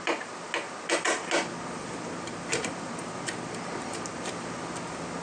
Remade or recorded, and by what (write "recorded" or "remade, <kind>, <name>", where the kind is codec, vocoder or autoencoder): recorded